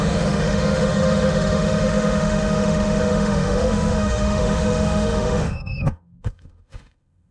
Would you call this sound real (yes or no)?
no